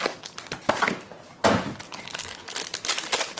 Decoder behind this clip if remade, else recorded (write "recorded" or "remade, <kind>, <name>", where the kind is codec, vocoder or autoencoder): recorded